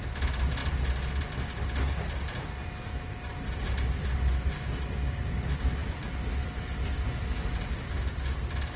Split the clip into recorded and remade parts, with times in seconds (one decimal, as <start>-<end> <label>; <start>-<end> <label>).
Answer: 0.0-8.8 recorded